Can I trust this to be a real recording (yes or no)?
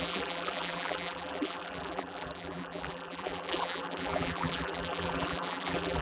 no